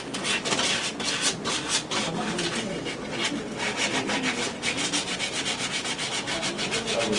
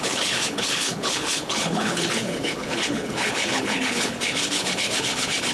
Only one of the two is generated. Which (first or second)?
second